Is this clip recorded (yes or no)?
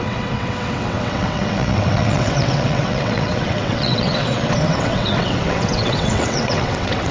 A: no